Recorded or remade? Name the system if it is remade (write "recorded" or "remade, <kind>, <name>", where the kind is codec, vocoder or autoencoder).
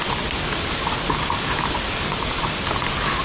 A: recorded